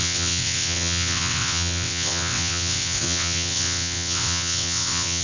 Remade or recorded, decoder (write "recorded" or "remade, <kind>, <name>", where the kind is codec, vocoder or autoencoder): remade, vocoder, WaveNeXt